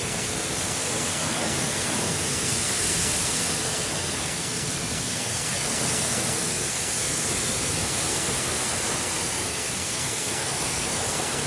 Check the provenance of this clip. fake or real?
fake